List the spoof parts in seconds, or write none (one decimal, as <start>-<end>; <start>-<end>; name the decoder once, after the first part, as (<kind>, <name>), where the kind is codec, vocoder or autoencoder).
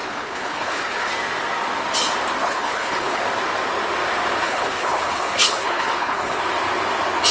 0.0-1.1 (codec, HILCodec); 2.4-3.2; 4.4-6.4